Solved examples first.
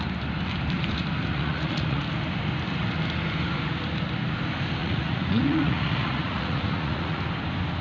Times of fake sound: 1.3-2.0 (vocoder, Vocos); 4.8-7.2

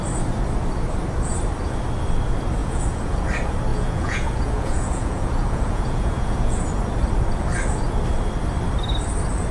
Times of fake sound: 2.6-3.2 (vocoder, Vocos); 3.7-6.6

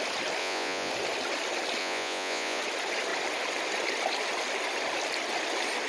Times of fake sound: 0.4-0.9 (vocoder, Vocos); 1.8-2.6

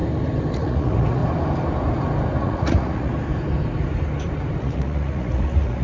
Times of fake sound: 0.5-1.2 (vocoder, Vocos); 2.4-3.1; 4.6-5.8

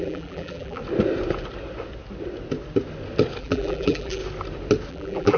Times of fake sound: 0.0-0.8 (vocoder, BigVGAN v2); 3.4-4.2; 4.9-5.4

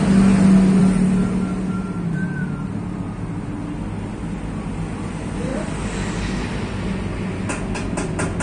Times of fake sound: none